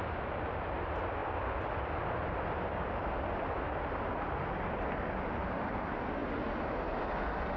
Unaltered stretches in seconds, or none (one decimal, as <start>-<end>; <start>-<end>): 0.0-7.6